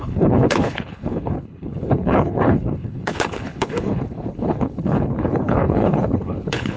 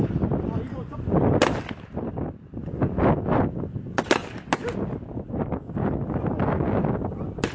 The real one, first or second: second